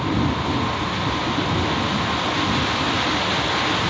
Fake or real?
real